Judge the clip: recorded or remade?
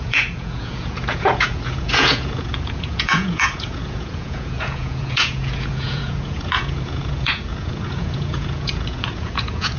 remade